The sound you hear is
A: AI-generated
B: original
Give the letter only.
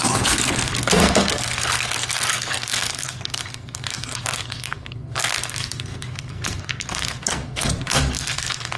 A